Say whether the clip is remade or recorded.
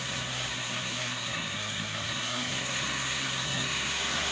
remade